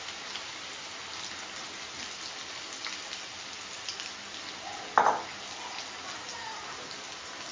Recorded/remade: recorded